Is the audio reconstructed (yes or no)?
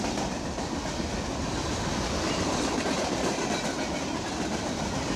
no